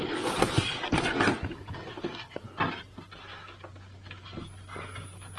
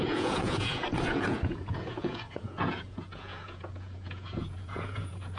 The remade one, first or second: second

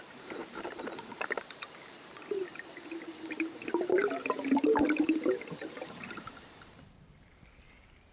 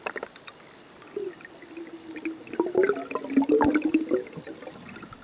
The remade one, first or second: first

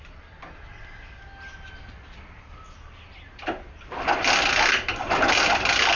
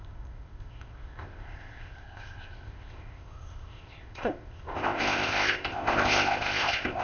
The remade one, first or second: second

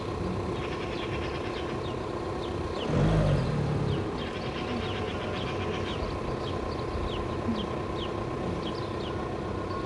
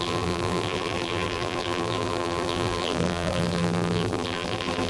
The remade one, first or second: second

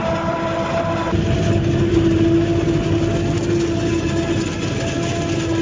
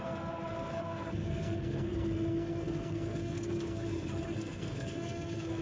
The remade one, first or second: second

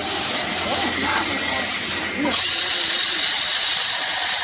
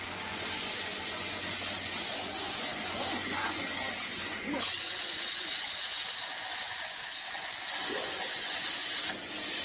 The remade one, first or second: second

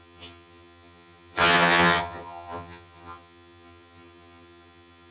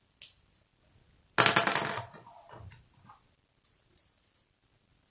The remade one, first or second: first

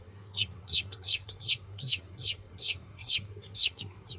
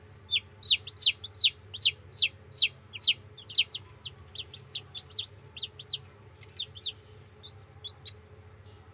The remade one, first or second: first